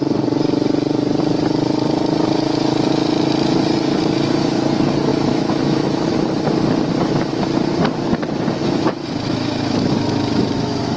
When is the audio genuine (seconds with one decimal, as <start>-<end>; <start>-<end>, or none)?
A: 0.0-5.1; 6.1-8.6